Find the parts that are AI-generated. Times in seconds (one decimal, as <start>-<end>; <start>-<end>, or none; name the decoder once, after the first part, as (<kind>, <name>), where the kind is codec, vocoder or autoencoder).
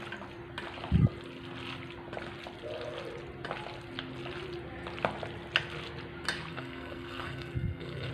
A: 6.5-8.1 (codec, SNAC)